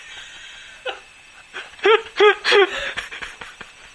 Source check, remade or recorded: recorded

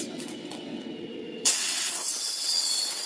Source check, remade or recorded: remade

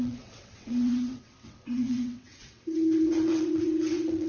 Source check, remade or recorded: remade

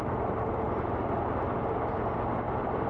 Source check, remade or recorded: recorded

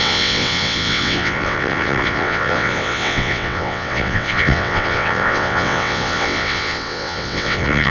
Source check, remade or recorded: remade